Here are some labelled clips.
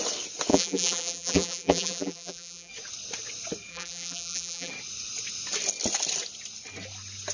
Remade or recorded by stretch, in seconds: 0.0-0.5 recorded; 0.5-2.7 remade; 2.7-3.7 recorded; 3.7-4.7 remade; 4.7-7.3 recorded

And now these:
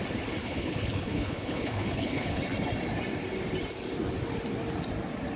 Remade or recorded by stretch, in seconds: 0.0-0.4 recorded; 0.4-2.4 remade; 2.4-5.4 recorded

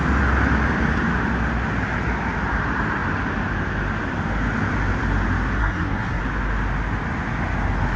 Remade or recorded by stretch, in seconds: 0.0-5.6 recorded; 5.6-6.2 remade; 6.2-8.0 recorded

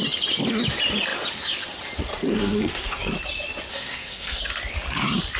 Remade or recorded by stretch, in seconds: 0.0-2.3 recorded; 2.3-3.1 remade; 3.1-3.7 recorded; 3.7-4.4 remade; 4.4-5.4 recorded

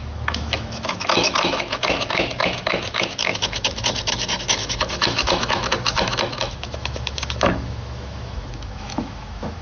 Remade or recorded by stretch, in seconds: 0.0-9.6 remade

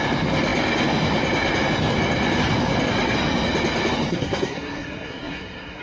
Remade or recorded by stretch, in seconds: 0.0-4.1 recorded; 4.1-5.8 remade